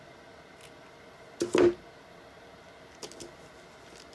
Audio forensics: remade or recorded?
recorded